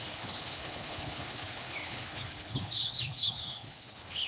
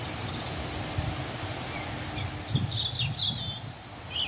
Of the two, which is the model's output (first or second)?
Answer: first